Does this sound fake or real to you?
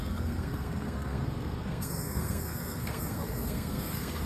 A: fake